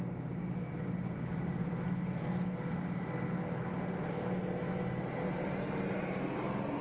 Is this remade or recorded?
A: recorded